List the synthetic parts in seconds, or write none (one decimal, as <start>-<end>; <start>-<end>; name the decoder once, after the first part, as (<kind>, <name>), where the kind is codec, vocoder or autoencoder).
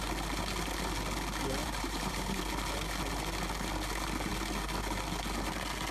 1.6-2.4 (vocoder, BigVGAN v2)